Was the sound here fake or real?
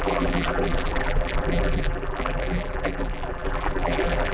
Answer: fake